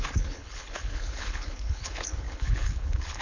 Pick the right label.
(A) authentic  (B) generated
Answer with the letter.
B